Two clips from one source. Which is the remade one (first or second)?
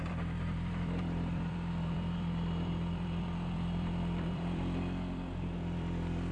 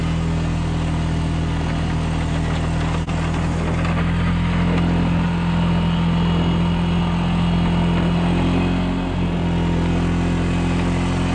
first